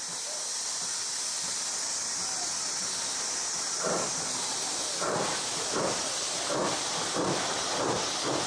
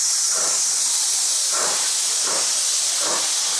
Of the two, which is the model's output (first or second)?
first